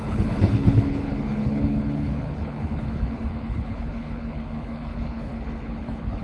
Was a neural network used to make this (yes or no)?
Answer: yes